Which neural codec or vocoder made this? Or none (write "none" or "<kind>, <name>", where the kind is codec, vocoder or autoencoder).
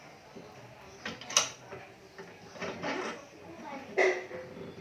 none